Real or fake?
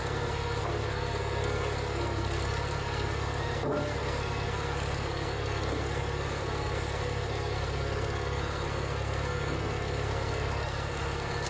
fake